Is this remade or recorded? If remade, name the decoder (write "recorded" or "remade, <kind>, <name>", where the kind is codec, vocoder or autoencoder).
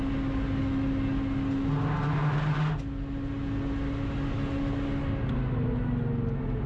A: recorded